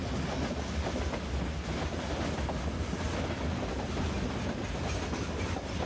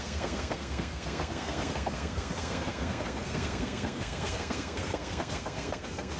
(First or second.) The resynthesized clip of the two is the second